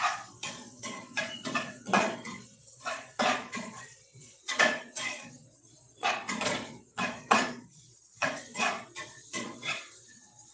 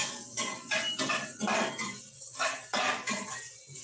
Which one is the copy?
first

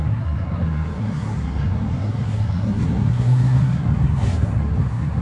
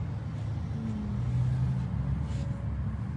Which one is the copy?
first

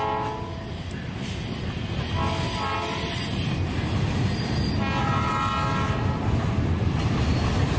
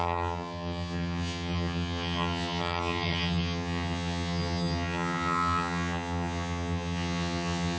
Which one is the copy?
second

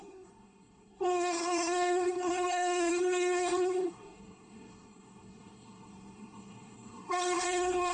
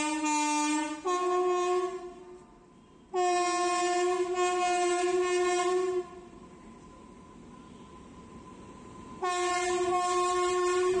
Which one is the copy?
first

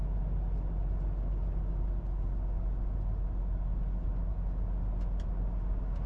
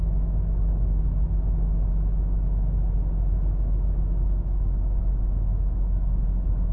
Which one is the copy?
second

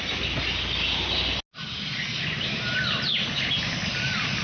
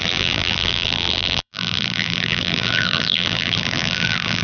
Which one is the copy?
second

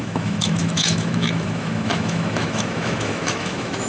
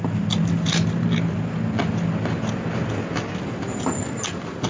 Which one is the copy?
first